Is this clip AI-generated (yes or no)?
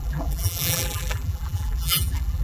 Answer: yes